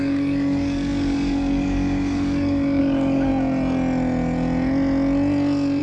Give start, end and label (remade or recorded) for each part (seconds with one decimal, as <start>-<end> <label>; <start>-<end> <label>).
0.0-3.3 remade; 3.3-5.8 recorded